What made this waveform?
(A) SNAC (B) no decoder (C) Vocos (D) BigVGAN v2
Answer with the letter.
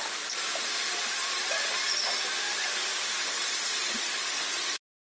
B